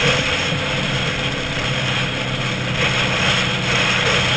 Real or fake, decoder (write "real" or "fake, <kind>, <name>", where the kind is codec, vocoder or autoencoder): real